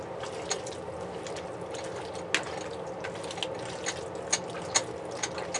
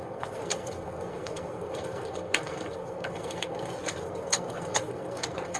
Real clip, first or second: first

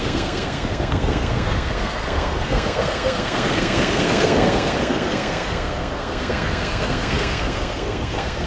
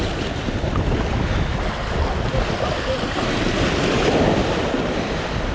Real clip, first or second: second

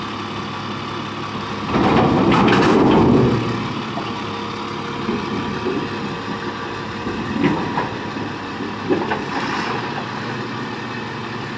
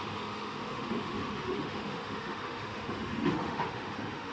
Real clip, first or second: first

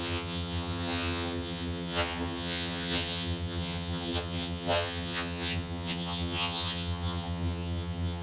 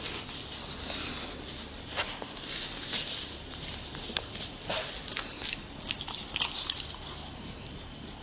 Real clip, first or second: second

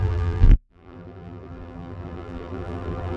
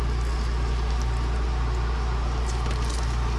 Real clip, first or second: second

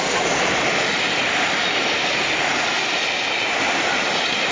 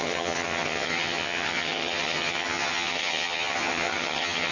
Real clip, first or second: first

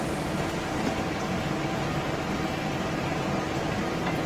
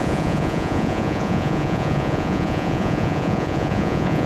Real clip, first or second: first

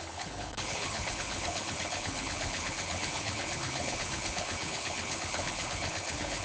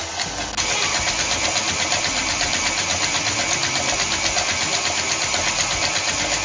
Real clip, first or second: second